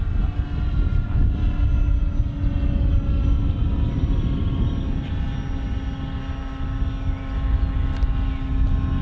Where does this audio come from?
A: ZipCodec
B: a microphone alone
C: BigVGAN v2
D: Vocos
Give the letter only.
B